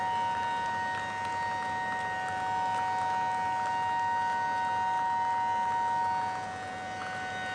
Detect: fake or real real